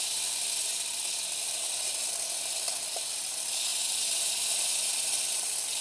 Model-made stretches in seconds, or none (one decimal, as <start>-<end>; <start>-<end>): none